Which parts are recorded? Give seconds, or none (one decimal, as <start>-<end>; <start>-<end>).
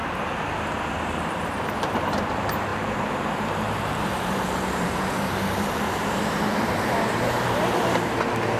0.0-1.1